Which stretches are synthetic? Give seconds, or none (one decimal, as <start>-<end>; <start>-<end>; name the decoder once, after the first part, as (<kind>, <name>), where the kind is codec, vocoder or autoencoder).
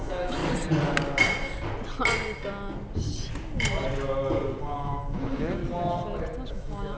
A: 0.0-0.4 (autoencoder, DAC-VAE); 4.6-5.6; 6.5-7.0